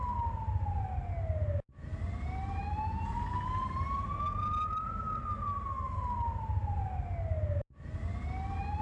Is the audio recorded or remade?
recorded